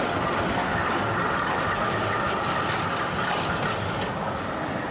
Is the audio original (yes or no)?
yes